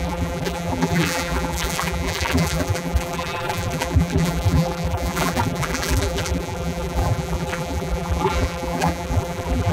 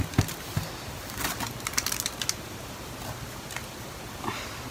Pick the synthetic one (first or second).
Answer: first